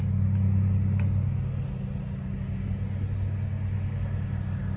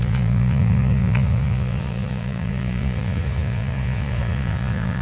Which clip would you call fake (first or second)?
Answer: second